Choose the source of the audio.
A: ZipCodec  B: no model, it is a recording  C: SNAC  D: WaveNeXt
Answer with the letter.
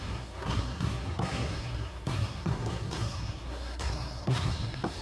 C